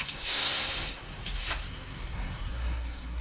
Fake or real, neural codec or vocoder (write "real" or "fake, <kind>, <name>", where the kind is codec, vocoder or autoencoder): fake, codec, SNAC